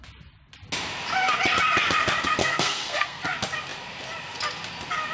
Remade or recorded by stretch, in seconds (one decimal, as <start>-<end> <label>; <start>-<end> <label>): 0.0-2.4 recorded; 2.4-3.2 remade; 3.2-5.1 recorded